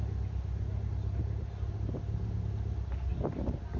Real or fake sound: real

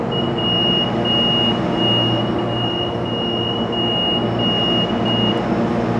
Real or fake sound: real